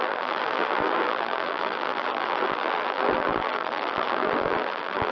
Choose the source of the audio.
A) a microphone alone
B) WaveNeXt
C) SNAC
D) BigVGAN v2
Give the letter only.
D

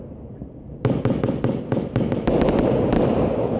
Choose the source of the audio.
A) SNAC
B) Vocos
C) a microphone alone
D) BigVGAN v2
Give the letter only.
C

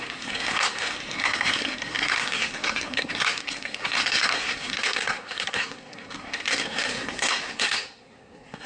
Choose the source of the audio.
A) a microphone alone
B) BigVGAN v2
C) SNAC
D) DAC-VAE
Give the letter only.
C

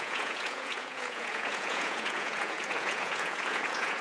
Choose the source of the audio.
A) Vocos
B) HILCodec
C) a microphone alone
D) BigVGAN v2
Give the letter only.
A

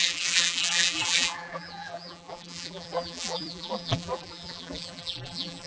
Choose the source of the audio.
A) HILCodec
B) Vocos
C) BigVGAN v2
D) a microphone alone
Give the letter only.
C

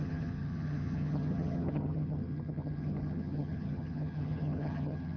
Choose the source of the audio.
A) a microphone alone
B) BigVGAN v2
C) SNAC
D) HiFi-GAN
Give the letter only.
D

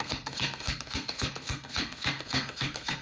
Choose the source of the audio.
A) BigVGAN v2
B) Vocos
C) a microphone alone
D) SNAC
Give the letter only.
D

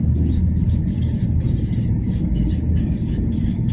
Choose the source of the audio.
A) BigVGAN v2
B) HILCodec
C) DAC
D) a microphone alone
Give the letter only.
C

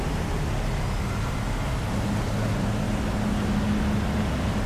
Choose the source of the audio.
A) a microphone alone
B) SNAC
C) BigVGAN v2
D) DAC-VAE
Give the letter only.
A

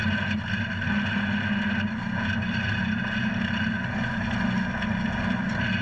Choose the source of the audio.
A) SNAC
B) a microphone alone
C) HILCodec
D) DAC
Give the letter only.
B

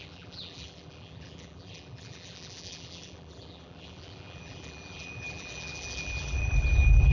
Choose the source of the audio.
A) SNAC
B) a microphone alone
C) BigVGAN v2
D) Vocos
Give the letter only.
C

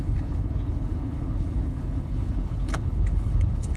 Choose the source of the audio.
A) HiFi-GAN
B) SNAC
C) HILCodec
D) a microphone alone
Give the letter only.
C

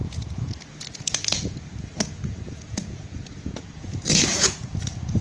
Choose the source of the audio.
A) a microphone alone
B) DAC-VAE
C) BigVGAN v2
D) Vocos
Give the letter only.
D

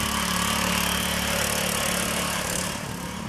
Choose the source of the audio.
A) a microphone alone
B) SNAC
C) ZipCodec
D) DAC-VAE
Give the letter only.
A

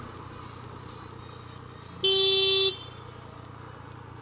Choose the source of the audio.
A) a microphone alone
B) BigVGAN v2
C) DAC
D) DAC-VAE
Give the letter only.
A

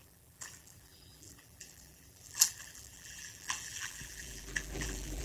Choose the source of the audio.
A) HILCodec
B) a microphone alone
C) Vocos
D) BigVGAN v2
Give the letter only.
D